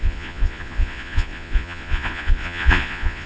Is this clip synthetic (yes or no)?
yes